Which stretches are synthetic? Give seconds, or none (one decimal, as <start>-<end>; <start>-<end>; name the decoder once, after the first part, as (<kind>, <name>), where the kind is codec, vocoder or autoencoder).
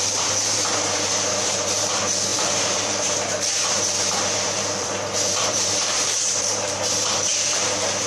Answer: 0.0-7.3 (vocoder, BigVGAN v2)